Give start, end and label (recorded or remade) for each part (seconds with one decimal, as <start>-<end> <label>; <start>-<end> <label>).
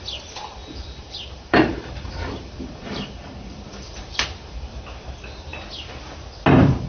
0.0-0.6 recorded; 0.6-4.7 remade; 4.7-6.9 recorded